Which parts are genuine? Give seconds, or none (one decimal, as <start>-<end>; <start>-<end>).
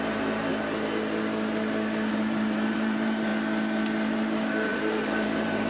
0.5-2.1; 3.3-4.1